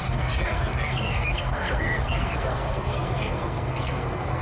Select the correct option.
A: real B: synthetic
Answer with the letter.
B